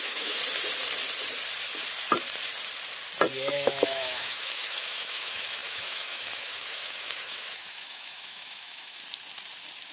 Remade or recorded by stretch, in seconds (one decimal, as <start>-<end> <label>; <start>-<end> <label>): 0.0-0.4 remade; 0.4-3.5 recorded; 3.5-9.0 remade; 9.0-9.9 recorded